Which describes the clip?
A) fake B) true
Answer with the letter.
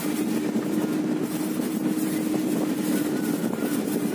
B